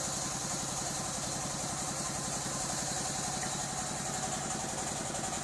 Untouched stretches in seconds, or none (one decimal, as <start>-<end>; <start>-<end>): 0.0-0.4; 3.6-5.4